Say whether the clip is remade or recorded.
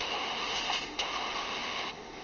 remade